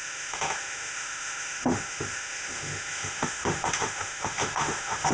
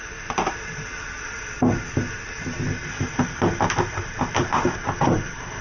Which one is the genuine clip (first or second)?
second